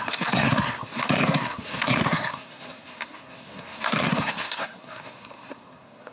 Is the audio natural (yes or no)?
no